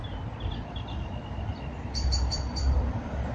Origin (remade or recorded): remade